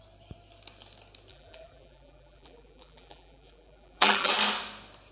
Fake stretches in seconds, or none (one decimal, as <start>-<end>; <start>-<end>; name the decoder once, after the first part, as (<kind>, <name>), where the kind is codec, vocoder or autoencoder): 1.3-4.3 (vocoder, BigVGAN v2)